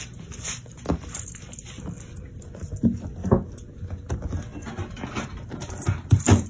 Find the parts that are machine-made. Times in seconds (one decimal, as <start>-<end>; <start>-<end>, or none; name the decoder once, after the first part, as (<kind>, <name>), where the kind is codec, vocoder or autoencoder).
none

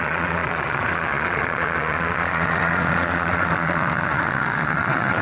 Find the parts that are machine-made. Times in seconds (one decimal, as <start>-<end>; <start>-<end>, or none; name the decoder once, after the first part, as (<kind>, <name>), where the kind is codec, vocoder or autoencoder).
0.0-5.2 (vocoder, Vocos)

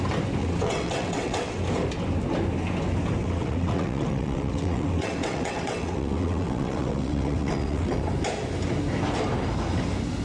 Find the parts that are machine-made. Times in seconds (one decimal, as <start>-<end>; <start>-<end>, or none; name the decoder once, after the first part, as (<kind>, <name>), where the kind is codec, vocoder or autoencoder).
0.4-1.6 (vocoder, WaveNeXt); 3.2-8.1

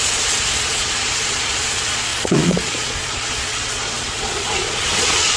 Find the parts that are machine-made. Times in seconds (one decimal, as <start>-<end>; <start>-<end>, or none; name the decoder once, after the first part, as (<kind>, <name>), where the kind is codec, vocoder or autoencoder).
0.0-5.4 (vocoder, Vocos)